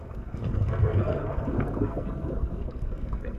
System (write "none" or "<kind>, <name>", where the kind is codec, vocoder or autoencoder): codec, SNAC